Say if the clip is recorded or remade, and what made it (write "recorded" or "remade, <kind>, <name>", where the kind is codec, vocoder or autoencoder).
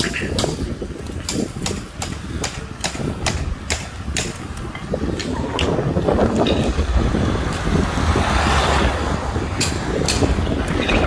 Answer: recorded